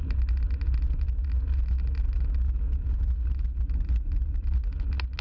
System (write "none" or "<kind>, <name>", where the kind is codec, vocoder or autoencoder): none